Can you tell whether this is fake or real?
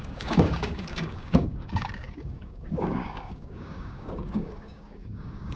fake